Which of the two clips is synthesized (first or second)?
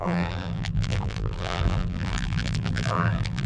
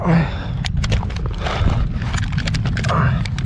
first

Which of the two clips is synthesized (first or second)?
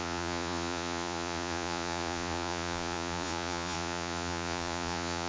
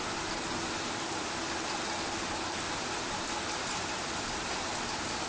first